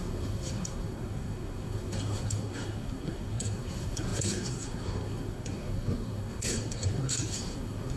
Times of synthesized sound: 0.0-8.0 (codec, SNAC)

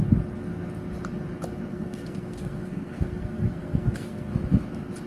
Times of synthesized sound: 1.7-4.3 (codec, SNAC)

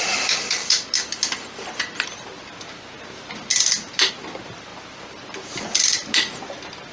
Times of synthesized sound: none

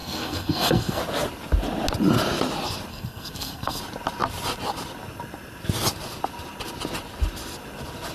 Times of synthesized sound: 0.0-1.0 (codec, SNAC); 2.9-3.8